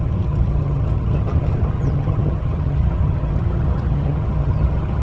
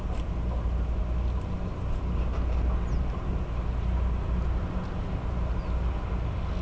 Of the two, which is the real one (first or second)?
second